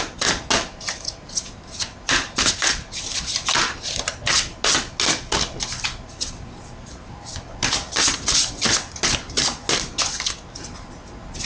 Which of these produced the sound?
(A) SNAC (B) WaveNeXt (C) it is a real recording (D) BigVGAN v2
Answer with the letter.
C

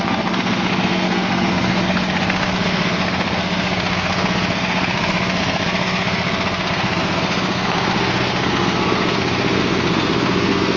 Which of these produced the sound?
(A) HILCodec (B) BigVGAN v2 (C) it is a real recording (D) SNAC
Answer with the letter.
D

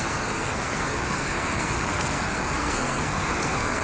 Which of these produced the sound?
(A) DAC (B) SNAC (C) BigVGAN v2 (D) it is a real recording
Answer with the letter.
B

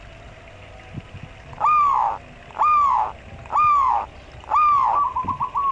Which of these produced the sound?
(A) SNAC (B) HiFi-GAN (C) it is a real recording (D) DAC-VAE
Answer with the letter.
C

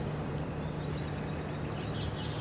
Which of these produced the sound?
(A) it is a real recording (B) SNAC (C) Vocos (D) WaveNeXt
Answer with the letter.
A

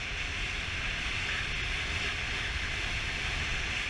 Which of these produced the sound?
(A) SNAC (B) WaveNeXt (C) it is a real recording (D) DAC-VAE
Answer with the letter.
C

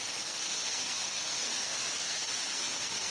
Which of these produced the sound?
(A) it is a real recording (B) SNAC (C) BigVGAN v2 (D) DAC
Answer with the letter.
B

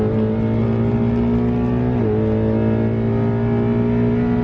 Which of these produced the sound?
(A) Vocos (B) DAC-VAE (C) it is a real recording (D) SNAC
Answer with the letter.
C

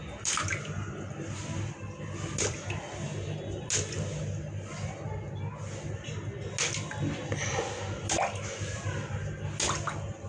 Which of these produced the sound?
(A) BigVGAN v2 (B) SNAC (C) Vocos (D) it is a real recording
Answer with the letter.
D